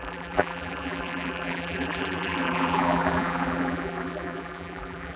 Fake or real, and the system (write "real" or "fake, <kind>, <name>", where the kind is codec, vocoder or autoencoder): fake, vocoder, BigVGAN v2